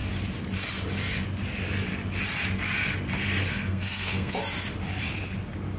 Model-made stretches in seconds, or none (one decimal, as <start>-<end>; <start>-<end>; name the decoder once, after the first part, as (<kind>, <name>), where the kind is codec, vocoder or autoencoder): 3.5-4.4 (codec, SNAC)